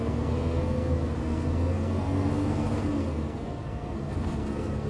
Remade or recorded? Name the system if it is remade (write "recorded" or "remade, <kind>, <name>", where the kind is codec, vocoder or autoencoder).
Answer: remade, codec, SNAC